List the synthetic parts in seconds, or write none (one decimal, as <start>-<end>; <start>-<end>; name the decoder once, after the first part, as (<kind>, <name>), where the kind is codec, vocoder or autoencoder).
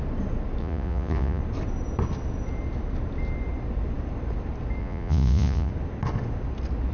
0.6-1.4 (vocoder, Vocos); 4.8-5.7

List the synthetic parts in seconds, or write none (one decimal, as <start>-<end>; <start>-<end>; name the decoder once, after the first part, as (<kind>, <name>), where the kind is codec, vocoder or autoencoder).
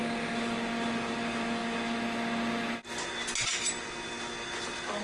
none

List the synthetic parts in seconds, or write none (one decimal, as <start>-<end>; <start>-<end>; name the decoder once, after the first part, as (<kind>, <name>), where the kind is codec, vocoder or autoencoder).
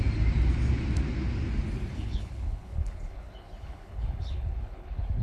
1.9-5.2 (codec, HILCodec)